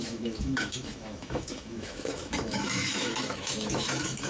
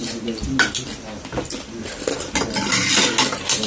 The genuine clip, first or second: second